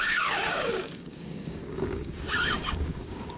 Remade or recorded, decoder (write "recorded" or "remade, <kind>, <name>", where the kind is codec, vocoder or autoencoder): remade, codec, DAC